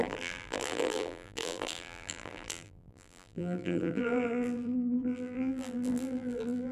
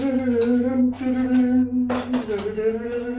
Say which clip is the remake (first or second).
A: first